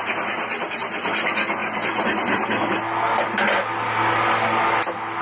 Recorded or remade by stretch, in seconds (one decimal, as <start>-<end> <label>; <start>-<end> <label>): 0.0-5.2 recorded